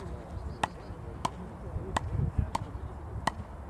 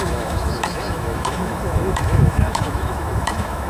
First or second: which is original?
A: first